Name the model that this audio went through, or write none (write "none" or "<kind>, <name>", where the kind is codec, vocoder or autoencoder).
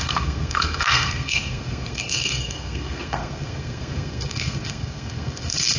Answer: codec, SNAC